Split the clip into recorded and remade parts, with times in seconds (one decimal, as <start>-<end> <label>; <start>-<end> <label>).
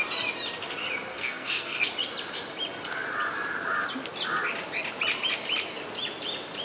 0.0-1.1 recorded; 1.1-1.9 remade; 1.9-6.6 recorded